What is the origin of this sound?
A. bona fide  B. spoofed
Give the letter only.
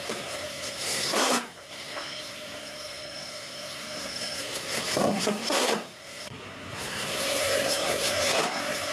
B